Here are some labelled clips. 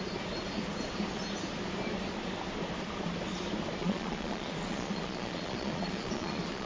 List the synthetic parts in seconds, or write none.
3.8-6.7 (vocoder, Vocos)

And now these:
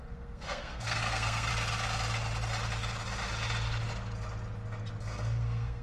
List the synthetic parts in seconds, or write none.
0.0-1.5 (codec, SNAC); 5.0-5.8

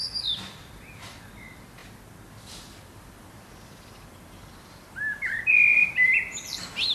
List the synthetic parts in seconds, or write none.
0.0-1.8 (vocoder, BigVGAN v2); 2.4-6.9

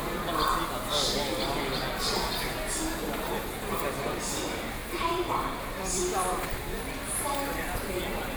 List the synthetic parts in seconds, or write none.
4.8-6.5 (vocoder, BigVGAN v2)

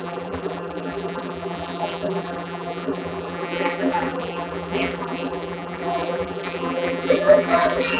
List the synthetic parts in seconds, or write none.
0.0-8.0 (vocoder, BigVGAN v2)

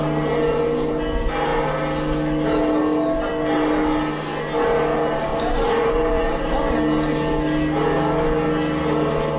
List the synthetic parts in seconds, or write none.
5.3-6.5 (vocoder, BigVGAN v2)